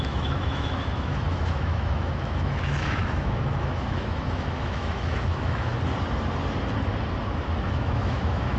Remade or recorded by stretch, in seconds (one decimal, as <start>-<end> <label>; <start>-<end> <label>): 0.0-5.7 remade; 5.7-7.7 recorded; 7.7-8.6 remade